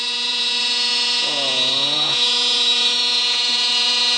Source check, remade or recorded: remade